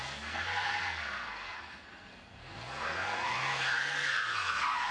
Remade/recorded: remade